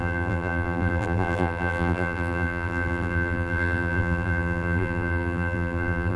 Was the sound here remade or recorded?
remade